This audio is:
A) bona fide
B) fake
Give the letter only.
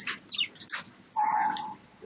A